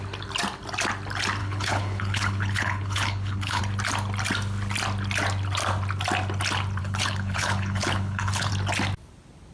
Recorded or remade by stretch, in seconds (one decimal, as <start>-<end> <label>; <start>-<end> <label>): 0.0-1.4 recorded; 1.4-3.6 remade; 3.6-6.8 recorded; 6.8-8.5 remade; 8.5-9.5 recorded